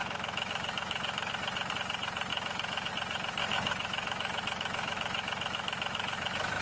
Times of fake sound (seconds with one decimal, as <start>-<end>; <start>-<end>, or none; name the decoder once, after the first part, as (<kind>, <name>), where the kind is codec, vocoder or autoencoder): 0.0-1.3 (autoencoder, DAC-VAE); 2.3-2.9; 3.5-6.6